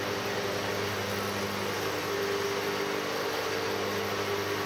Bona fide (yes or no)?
yes